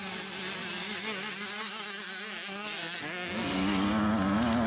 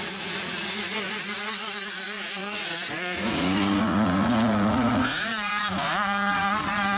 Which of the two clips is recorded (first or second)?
first